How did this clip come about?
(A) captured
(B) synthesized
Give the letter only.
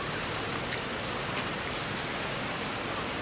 B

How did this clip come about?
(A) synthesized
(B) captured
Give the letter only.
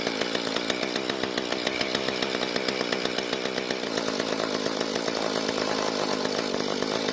B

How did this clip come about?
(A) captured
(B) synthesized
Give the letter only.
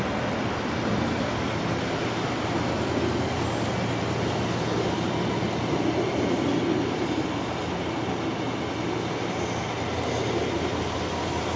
A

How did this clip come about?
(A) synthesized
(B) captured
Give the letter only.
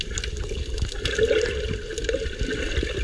B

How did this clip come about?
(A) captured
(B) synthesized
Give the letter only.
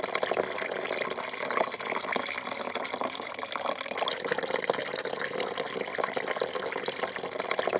A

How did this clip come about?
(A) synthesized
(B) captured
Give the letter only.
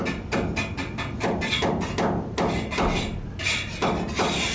B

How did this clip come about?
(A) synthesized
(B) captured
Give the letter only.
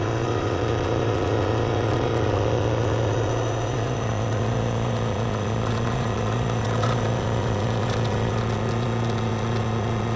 A